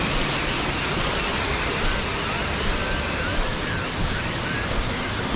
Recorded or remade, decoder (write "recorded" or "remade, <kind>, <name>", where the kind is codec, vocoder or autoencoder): recorded